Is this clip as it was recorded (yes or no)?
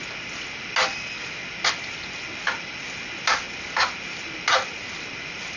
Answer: yes